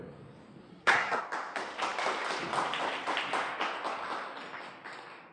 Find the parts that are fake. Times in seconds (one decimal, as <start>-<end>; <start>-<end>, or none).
0.7-1.2